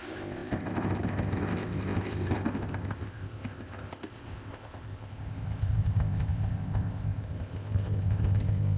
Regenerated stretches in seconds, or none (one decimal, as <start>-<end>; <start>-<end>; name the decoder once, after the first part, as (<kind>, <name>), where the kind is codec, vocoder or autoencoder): 0.0-8.8 (codec, ZipCodec)